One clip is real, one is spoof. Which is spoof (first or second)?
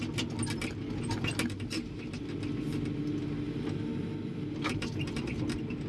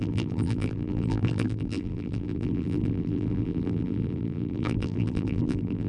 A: second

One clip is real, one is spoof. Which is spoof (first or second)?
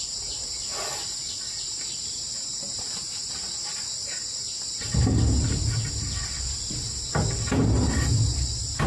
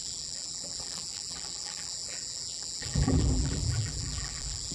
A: second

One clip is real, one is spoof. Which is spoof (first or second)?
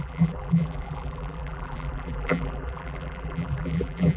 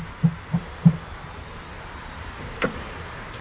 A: first